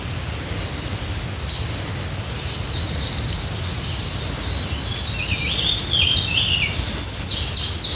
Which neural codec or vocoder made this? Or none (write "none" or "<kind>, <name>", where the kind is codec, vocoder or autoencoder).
none